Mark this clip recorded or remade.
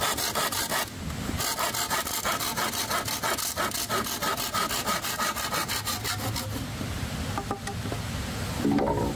recorded